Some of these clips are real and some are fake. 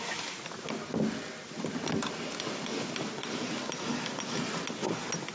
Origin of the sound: real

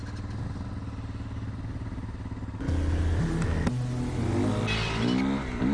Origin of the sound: real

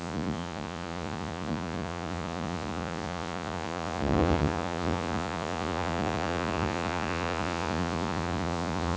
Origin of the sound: fake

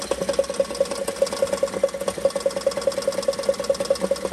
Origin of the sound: real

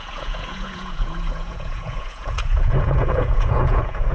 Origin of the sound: fake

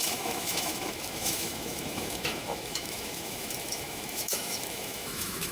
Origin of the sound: fake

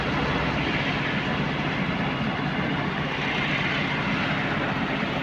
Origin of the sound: real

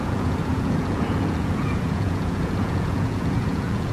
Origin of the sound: fake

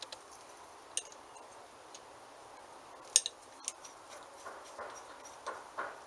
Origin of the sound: real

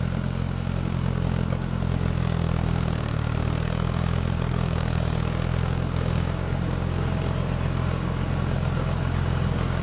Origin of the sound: fake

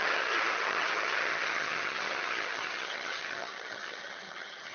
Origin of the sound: fake